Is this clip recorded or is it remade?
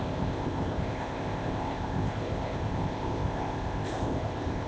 remade